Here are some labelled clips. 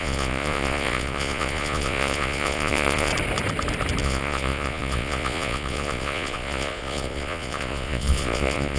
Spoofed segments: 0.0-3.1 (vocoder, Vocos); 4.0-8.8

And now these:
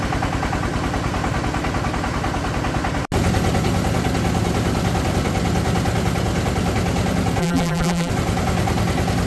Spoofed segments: 7.4-8.1 (vocoder, BigVGAN v2)

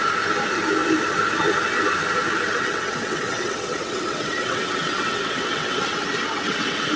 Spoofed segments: 2.6-7.0 (vocoder, WaveNeXt)

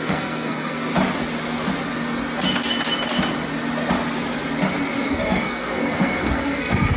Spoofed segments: 0.0-0.9 (codec, SNAC); 5.1-7.0

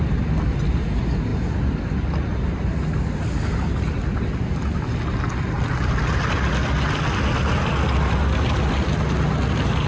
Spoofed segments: none

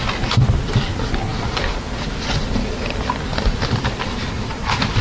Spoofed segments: none

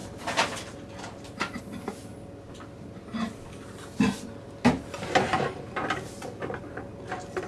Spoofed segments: none

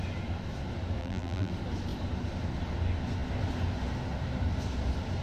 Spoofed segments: 1.0-1.5 (vocoder, BigVGAN v2)